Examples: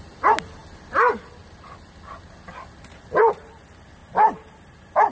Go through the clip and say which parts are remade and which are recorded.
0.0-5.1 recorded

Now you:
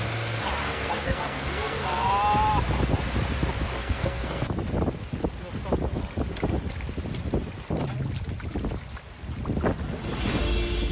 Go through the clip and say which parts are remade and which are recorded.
0.0-0.6 recorded; 0.6-2.1 remade; 2.1-3.8 recorded; 3.8-4.5 remade; 4.5-10.9 recorded

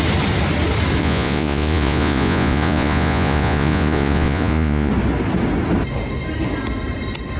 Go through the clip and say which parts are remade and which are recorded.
0.0-1.0 recorded; 1.0-4.9 remade; 4.9-7.4 recorded

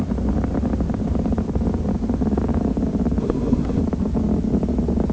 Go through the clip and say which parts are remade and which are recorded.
0.0-3.2 recorded; 3.2-3.8 remade; 3.8-5.1 recorded

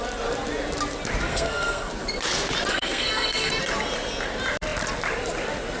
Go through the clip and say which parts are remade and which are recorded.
0.0-1.3 recorded; 1.3-1.9 remade; 1.9-2.7 recorded; 2.7-3.5 remade; 3.5-5.8 recorded

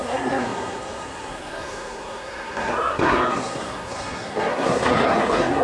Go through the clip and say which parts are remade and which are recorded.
0.0-5.6 remade

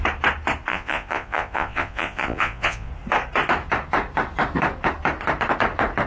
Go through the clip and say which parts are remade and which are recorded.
0.0-0.7 recorded; 0.7-2.9 remade; 2.9-6.1 recorded